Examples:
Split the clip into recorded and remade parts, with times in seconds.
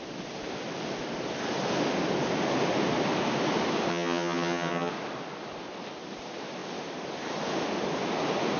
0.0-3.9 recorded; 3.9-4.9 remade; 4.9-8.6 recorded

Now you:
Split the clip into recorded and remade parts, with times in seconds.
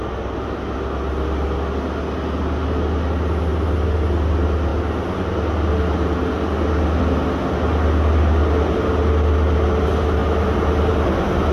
0.0-11.5 recorded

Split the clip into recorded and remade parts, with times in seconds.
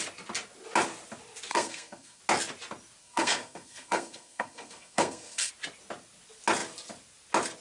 0.0-1.5 recorded; 1.5-2.2 remade; 2.2-3.0 recorded; 3.0-5.5 remade; 5.5-7.6 recorded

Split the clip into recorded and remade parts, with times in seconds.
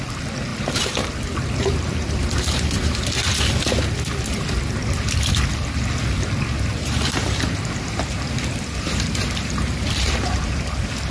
0.0-0.5 recorded; 0.5-3.0 remade; 3.0-6.7 recorded; 6.7-10.7 remade; 10.7-11.1 recorded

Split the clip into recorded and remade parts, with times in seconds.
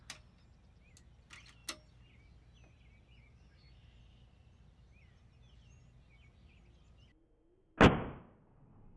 0.0-9.0 recorded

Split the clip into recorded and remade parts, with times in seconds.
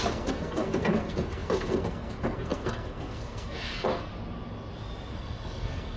0.0-4.1 remade; 4.1-5.1 recorded; 5.1-6.0 remade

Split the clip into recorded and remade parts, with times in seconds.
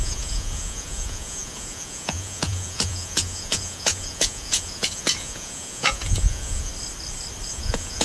0.0-6.7 remade; 6.7-7.5 recorded; 7.5-8.0 remade